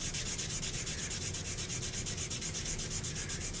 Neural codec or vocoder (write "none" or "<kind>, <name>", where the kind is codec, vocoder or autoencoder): none